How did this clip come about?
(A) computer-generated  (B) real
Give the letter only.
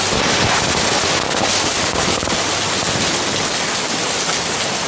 B